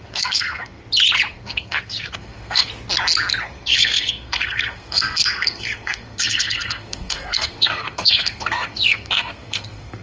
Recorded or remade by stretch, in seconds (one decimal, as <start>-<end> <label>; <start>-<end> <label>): 0.0-0.8 remade; 0.8-1.3 recorded; 1.3-2.7 remade; 2.7-3.4 recorded; 3.4-10.0 remade